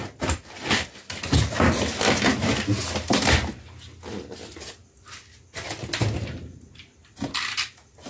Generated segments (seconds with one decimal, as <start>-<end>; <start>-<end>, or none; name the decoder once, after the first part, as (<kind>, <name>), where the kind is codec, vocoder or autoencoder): none